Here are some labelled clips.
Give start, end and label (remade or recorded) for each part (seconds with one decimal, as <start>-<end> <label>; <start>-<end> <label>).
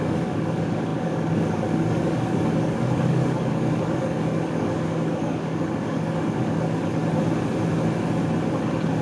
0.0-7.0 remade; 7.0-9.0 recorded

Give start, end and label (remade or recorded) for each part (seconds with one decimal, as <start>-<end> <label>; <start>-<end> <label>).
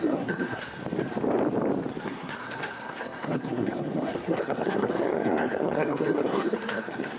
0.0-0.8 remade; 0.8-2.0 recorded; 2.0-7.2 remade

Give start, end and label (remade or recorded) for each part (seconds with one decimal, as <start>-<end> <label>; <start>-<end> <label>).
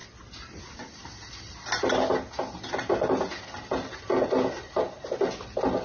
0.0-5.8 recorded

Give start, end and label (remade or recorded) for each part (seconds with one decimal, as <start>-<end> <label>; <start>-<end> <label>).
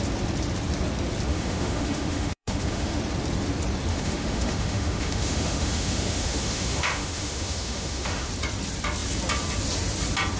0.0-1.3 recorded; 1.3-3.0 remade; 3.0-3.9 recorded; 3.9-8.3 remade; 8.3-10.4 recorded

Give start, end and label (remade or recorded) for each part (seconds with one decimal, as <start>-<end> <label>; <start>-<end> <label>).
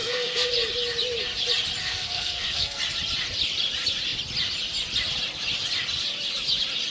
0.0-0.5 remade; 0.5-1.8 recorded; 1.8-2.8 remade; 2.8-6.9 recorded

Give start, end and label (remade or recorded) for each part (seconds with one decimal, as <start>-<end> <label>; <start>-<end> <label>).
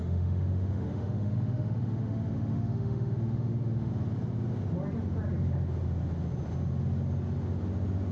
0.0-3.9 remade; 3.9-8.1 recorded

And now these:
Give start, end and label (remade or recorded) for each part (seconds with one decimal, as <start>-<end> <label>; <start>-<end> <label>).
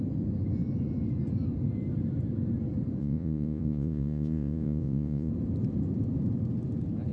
0.0-3.0 recorded; 3.0-5.3 remade; 5.3-7.1 recorded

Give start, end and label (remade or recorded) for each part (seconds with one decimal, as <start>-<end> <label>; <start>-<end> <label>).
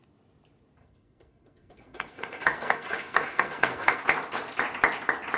0.0-0.8 recorded; 0.8-4.0 remade; 4.0-5.4 recorded